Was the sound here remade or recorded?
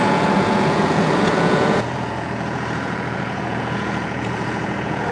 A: remade